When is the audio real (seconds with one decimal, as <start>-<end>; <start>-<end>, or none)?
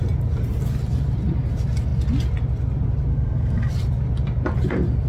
0.0-3.1; 3.7-5.1